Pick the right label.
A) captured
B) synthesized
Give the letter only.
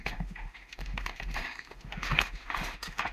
B